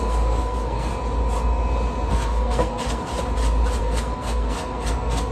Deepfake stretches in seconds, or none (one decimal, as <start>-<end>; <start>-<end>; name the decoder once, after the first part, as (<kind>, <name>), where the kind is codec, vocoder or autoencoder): 0.0-0.9 (codec, SNAC); 2.1-3.1; 3.8-5.3